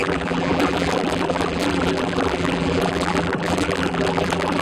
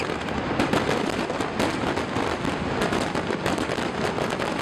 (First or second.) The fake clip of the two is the first